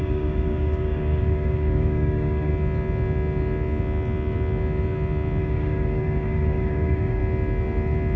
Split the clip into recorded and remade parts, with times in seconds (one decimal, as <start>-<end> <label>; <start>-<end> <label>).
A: 0.0-2.5 remade; 2.5-5.4 recorded; 5.4-7.2 remade; 7.2-8.2 recorded

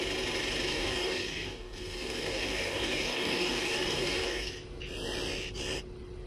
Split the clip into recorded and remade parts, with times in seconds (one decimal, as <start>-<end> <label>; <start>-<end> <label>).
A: 0.0-0.7 recorded; 0.7-4.5 remade; 4.5-6.3 recorded

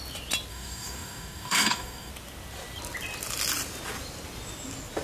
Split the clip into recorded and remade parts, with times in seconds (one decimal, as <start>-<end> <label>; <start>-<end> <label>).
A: 0.0-0.5 recorded; 0.5-2.1 remade; 2.1-5.0 recorded

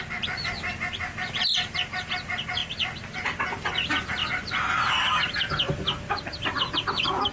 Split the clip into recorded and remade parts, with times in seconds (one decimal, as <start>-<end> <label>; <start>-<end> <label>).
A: 0.0-7.3 recorded

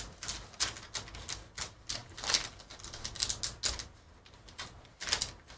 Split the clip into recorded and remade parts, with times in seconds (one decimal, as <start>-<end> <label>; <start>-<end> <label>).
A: 0.0-5.6 recorded